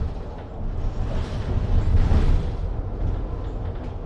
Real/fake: real